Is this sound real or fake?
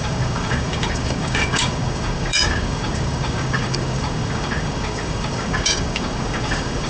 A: fake